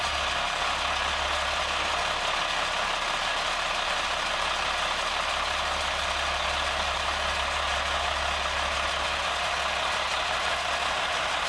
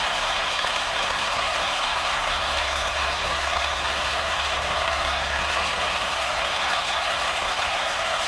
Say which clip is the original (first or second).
first